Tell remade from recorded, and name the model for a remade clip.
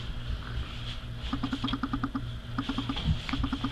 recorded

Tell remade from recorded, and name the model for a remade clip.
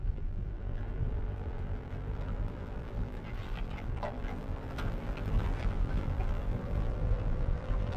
remade, vocoder, BigVGAN v2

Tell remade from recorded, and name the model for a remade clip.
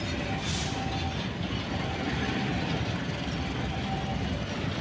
recorded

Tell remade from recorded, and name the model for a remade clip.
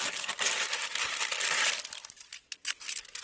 recorded